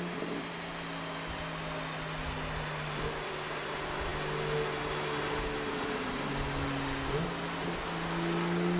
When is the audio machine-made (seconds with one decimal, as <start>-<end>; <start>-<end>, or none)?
none